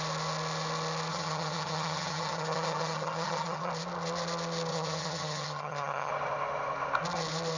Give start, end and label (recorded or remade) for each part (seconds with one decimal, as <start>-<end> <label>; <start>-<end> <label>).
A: 0.0-1.1 recorded; 1.1-3.7 remade; 3.7-4.7 recorded; 4.7-6.1 remade; 6.1-7.6 recorded